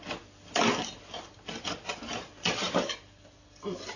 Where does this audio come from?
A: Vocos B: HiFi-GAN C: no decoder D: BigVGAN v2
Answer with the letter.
C